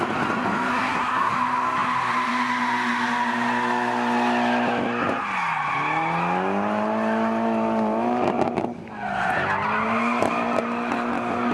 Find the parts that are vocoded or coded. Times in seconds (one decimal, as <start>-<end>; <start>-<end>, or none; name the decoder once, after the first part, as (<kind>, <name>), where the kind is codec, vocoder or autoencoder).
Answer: 0.7-1.3 (codec, SNAC)